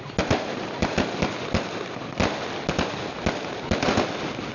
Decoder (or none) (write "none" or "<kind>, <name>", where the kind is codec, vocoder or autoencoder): none